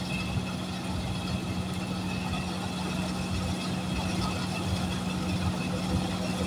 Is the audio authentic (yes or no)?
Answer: yes